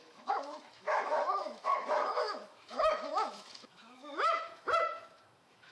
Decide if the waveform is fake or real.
fake